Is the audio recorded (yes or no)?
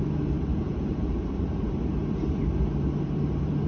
no